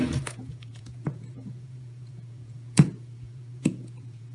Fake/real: fake